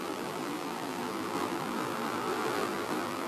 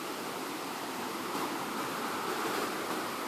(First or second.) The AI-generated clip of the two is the first